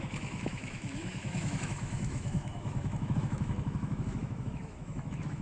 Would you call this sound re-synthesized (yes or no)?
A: yes